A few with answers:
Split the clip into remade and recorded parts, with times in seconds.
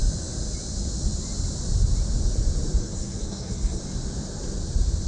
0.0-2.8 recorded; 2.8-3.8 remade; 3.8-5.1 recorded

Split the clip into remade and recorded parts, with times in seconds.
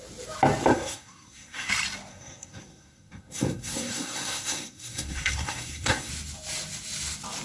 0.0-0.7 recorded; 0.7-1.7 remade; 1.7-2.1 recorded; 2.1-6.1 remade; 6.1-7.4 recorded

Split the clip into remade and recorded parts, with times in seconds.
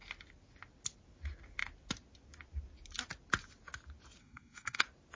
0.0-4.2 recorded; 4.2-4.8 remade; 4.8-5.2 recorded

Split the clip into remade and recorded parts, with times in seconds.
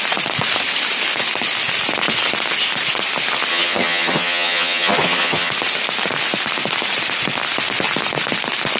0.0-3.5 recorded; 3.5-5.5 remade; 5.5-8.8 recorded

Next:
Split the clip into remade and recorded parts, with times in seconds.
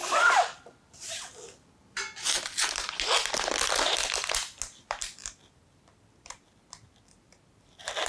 0.0-8.1 recorded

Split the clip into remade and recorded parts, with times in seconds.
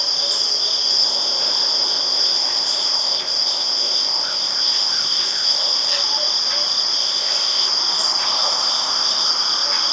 0.0-0.9 recorded; 0.9-5.9 remade; 5.9-7.0 recorded; 7.0-7.7 remade; 7.7-8.2 recorded; 8.2-9.3 remade; 9.3-9.9 recorded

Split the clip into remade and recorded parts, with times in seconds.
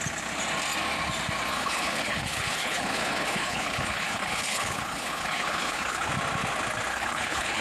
0.0-1.5 recorded; 1.5-6.1 remade; 6.1-6.9 recorded; 6.9-7.6 remade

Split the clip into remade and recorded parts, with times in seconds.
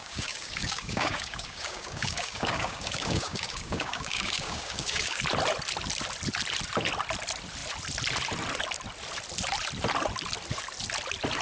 0.0-5.2 remade; 5.2-11.4 recorded